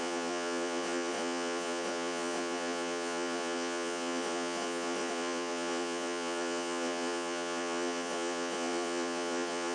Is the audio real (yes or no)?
no